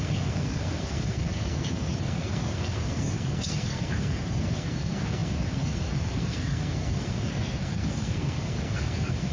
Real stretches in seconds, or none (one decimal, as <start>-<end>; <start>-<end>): none

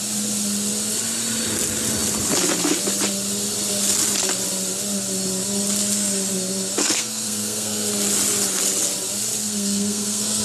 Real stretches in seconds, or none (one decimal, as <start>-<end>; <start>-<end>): 0.0-6.8; 7.9-9.4

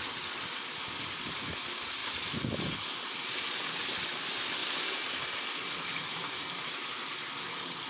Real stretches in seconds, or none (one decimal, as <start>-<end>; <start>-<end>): 0.0-7.9

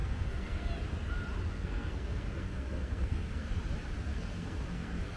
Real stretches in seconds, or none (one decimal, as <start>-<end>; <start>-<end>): 0.7-1.5; 3.5-4.1

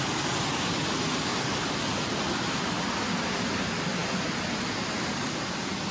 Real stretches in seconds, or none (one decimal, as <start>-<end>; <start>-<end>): 0.0-1.3; 1.8-4.0

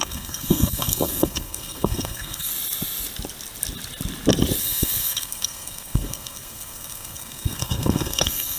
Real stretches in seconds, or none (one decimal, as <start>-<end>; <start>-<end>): 2.5-4.6

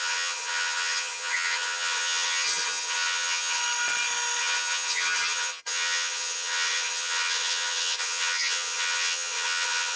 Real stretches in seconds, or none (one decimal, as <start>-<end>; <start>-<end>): 3.6-4.4